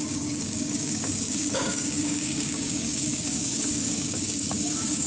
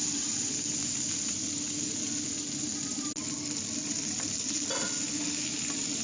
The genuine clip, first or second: second